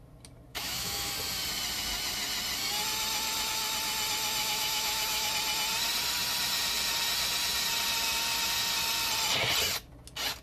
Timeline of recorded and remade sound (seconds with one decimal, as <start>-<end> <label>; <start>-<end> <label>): 0.0-0.5 recorded; 0.5-1.1 remade; 1.1-4.4 recorded; 4.4-5.3 remade; 5.3-10.4 recorded